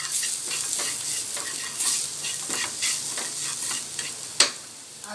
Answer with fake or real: real